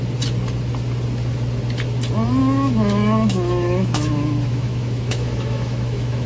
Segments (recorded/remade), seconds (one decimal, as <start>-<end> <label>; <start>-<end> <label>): 0.0-2.4 recorded; 2.4-6.3 remade